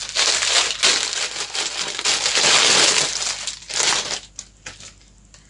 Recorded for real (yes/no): yes